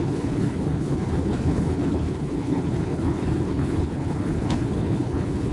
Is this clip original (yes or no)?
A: no